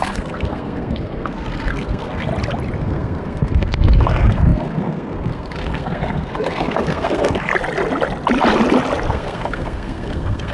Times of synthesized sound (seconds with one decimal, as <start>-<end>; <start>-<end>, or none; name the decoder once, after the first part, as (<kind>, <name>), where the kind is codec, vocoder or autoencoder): 0.0-2.3 (codec, SNAC); 2.8-7.5; 9.1-10.5